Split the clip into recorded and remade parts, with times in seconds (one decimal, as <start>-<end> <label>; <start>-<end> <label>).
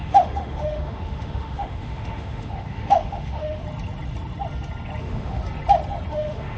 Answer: 0.0-3.6 remade; 3.6-5.0 recorded; 5.0-5.4 remade; 5.4-6.1 recorded; 6.1-6.6 remade